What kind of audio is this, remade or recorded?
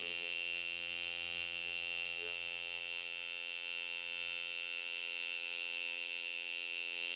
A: remade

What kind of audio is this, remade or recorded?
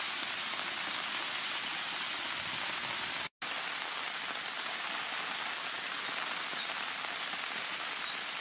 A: recorded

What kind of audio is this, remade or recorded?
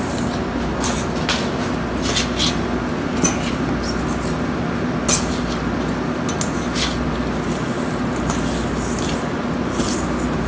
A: recorded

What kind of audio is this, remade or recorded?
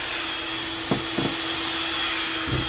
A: recorded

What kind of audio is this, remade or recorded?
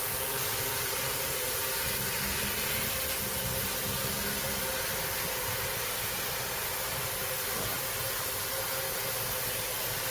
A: recorded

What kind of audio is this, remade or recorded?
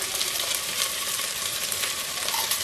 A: remade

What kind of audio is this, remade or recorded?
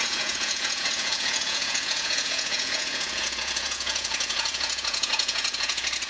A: remade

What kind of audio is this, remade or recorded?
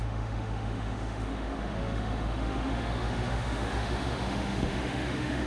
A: remade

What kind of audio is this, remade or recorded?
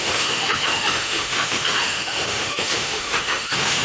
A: remade